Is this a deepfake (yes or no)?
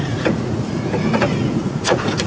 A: yes